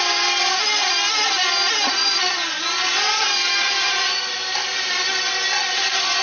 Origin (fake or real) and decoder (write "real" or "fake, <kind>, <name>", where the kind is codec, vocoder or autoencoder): real